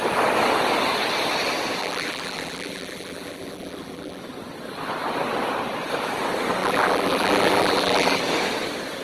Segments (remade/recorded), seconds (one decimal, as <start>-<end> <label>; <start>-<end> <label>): 0.0-1.8 recorded; 1.8-4.2 remade; 4.2-6.6 recorded; 6.6-8.2 remade; 8.2-9.0 recorded